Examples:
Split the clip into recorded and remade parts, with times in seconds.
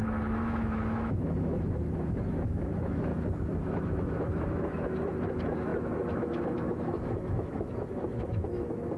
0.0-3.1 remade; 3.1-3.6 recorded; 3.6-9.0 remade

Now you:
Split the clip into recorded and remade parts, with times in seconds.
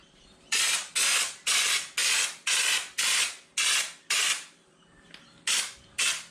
0.0-2.0 remade; 2.0-5.8 recorded; 5.8-6.3 remade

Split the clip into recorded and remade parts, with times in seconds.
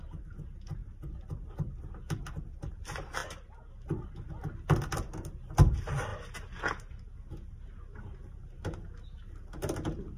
0.0-10.2 recorded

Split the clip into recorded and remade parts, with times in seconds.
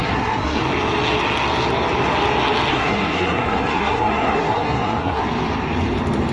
0.0-0.6 remade; 0.6-2.7 recorded; 2.7-5.2 remade; 5.2-6.3 recorded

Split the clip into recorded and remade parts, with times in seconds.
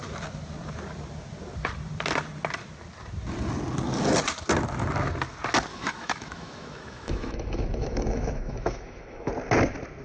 0.0-5.7 recorded; 5.7-9.3 remade; 9.3-10.0 recorded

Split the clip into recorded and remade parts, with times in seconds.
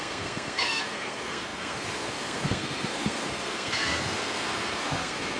0.0-5.4 remade